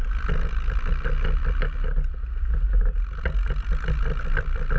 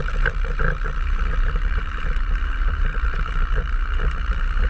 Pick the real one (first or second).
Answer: first